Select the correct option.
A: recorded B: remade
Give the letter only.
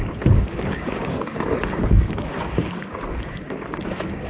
B